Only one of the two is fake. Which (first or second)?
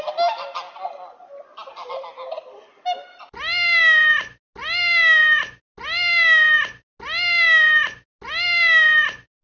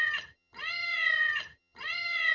second